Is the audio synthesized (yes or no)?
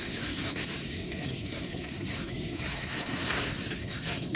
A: yes